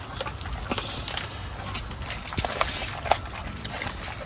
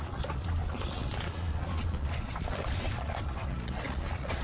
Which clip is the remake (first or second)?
second